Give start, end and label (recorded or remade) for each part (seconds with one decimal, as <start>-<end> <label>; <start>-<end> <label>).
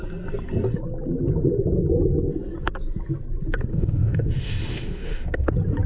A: 0.0-3.7 recorded; 3.7-5.5 remade; 5.5-5.9 recorded